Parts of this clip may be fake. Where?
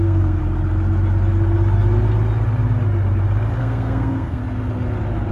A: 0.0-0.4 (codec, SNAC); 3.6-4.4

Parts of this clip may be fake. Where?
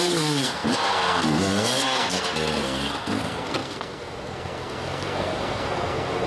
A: 0.0-6.3 (codec, SNAC)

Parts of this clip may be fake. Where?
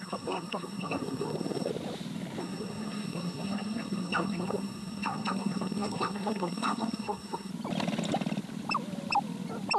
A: 0.0-1.7 (codec, SNAC); 2.4-7.5